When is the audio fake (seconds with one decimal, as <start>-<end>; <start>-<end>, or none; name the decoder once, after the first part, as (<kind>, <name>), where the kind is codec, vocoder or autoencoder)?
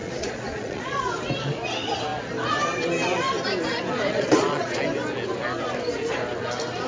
0.0-1.0 (vocoder, Vocos); 4.1-4.8